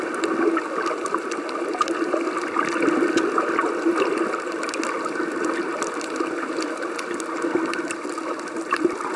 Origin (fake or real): real